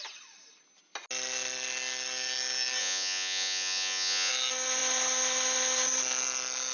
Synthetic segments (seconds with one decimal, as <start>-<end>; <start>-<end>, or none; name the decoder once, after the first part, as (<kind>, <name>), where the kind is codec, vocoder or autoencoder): 2.8-4.3 (vocoder, Vocos)